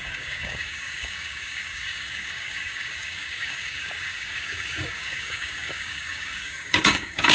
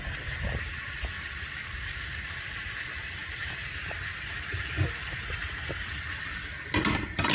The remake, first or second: first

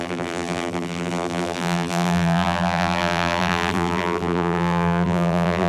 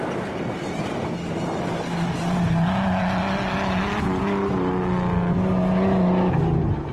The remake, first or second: first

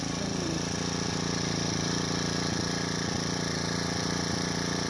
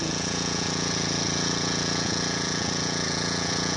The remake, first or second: second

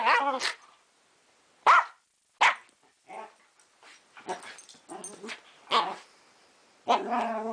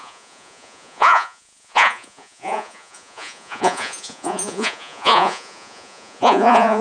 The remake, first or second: second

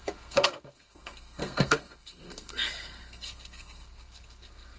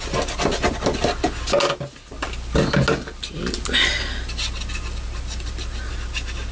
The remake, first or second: first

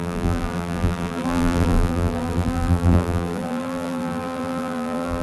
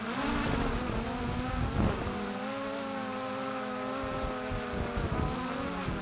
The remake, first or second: first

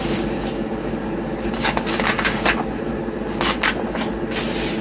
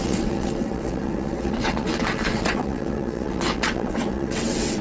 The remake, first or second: second